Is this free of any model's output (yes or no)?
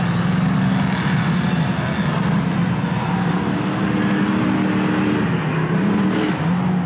yes